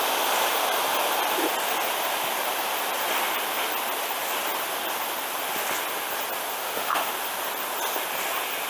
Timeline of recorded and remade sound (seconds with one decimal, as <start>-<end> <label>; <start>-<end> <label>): 0.0-6.6 recorded; 6.6-7.1 remade; 7.1-8.7 recorded